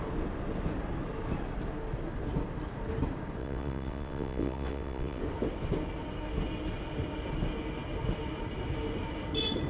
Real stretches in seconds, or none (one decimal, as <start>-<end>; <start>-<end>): 0.0-3.4; 5.2-9.7